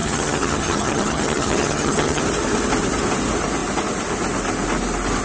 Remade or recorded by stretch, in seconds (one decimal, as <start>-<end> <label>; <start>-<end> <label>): 0.0-2.2 remade; 2.2-5.2 recorded

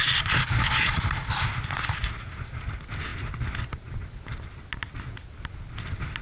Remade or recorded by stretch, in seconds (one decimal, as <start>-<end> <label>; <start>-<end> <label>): 0.0-6.2 recorded

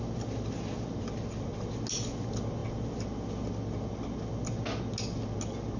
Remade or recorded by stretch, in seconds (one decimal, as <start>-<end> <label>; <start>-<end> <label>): 0.0-5.8 recorded